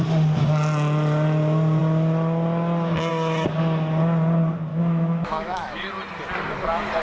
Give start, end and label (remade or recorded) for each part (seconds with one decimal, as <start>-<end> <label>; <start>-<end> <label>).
0.0-4.7 recorded; 4.7-5.9 remade; 5.9-7.0 recorded